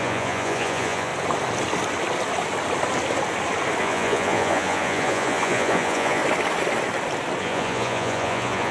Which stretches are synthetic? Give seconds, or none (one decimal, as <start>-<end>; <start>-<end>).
0.0-1.1; 3.8-6.2; 7.4-8.7